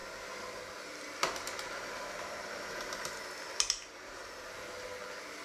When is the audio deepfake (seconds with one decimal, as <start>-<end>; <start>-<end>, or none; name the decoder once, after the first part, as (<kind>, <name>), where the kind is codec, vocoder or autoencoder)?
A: none